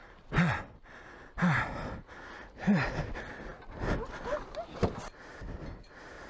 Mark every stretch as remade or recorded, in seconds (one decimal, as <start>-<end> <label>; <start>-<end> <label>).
0.0-6.3 recorded